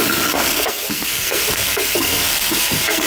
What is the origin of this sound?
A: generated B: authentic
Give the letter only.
A